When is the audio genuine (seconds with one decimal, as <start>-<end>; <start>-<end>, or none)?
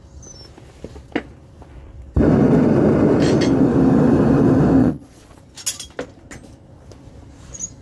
0.0-4.8; 5.4-7.8